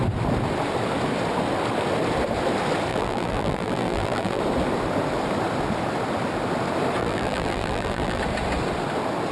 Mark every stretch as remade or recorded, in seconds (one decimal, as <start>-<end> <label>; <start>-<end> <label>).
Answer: 0.0-2.9 recorded; 2.9-4.4 remade; 4.4-7.0 recorded; 7.0-8.2 remade; 8.2-9.3 recorded